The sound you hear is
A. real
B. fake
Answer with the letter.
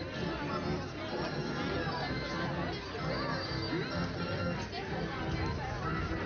A